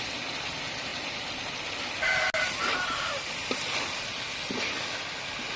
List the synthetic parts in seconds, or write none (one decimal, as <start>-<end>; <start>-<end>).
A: none